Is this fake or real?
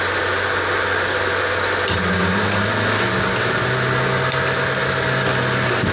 real